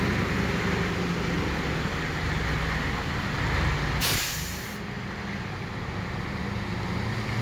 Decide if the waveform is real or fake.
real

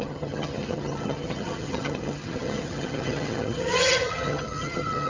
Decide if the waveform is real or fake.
fake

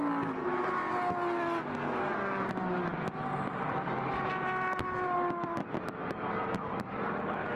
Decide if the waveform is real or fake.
real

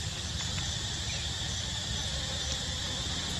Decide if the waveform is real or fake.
real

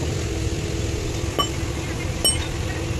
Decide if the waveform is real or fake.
real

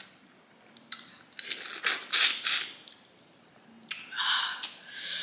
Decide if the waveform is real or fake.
real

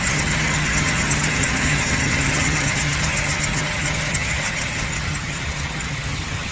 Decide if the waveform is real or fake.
fake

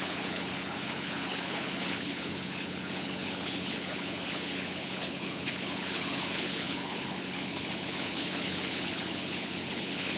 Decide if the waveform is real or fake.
fake